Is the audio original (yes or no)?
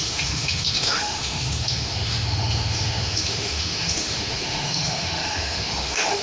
no